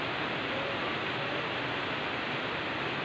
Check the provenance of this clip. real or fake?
real